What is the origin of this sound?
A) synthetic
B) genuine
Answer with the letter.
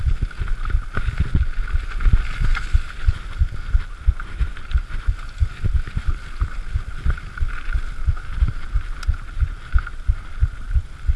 B